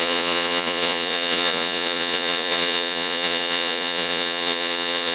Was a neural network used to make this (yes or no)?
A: yes